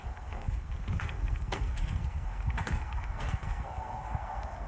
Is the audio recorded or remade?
remade